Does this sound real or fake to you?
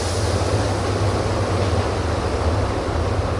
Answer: real